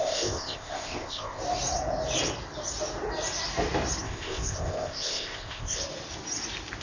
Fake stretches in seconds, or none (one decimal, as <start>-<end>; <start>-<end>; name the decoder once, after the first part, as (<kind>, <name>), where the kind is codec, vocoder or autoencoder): 0.0-1.4 (codec, ZipCodec); 4.0-5.8

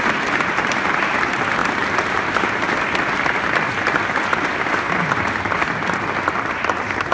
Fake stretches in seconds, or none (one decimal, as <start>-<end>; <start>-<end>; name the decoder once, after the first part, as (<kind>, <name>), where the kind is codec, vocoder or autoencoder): none

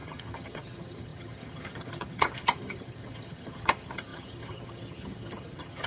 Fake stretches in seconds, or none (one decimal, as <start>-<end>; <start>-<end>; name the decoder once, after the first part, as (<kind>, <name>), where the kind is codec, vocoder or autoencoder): 0.0-5.9 (vocoder, HiFi-GAN)

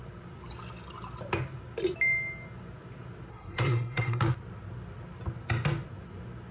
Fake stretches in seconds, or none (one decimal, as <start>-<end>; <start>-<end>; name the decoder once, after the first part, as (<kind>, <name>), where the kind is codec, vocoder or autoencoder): 3.3-4.2 (codec, SNAC)

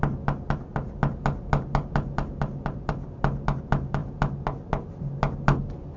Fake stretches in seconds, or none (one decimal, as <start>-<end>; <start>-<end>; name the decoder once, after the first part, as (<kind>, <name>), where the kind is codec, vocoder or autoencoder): none